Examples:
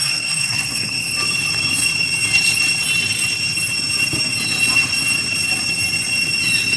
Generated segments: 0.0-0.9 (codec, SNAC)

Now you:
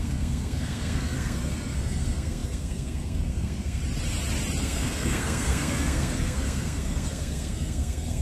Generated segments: 0.0-3.8 (codec, SNAC); 4.6-8.2

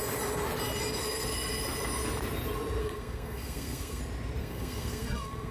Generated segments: 2.8-4.0 (codec, SNAC); 4.4-5.5

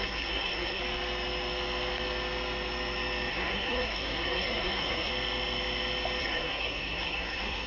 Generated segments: 0.0-0.8 (codec, SNAC); 3.3-5.1; 6.2-7.7

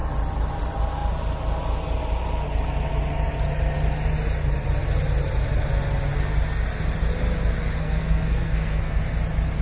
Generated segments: 7.8-9.0 (codec, SNAC)

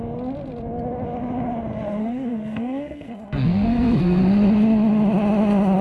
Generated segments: 2.0-4.2 (codec, SNAC)

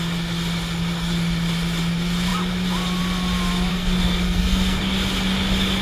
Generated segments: 3.7-4.8 (codec, SNAC)

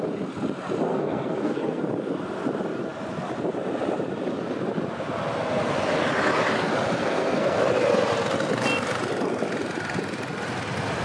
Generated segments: 0.9-1.8 (codec, SNAC); 7.0-7.6